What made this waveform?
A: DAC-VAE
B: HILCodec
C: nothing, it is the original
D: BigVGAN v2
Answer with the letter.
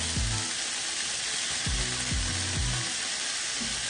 C